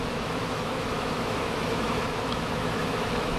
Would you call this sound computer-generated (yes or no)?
yes